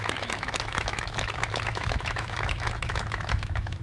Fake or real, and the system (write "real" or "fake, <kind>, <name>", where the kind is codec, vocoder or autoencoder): fake, autoencoder, DAC-VAE